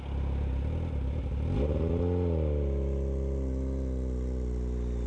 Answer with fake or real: real